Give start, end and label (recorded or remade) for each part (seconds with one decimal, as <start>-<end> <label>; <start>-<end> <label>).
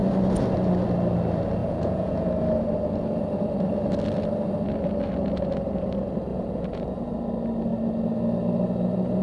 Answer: 0.0-1.6 recorded; 1.6-2.3 remade; 2.3-6.3 recorded; 6.3-7.1 remade; 7.1-9.2 recorded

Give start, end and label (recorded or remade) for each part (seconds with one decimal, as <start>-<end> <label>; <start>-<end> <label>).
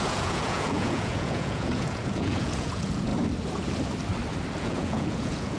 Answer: 0.0-3.1 remade; 3.1-4.6 recorded; 4.6-5.6 remade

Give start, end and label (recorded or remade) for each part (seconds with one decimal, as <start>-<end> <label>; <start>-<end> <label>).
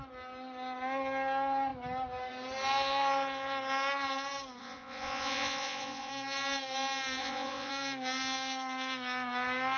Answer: 0.0-4.6 recorded; 4.6-6.1 remade; 6.1-7.2 recorded; 7.2-7.7 remade; 7.7-9.8 recorded